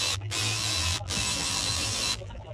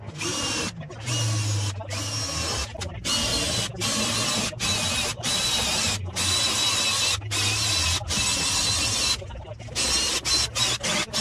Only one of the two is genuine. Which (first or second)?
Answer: second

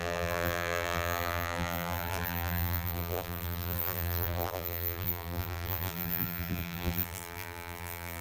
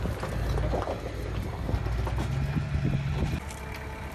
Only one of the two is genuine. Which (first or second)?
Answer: second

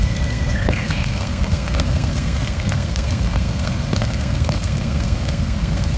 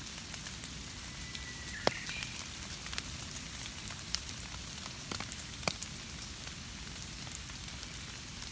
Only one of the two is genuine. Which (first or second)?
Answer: second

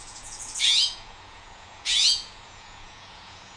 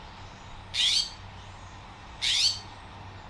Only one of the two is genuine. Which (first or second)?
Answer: second